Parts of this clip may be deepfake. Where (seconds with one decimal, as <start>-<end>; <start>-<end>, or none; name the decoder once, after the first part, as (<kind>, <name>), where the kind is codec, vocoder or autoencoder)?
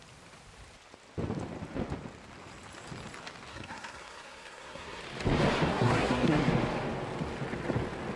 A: 3.5-5.0 (codec, SNAC); 5.7-6.5